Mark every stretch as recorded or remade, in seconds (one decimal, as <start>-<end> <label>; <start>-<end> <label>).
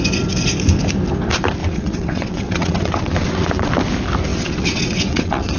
0.0-1.6 recorded; 1.6-3.7 remade; 3.7-4.3 recorded; 4.3-5.6 remade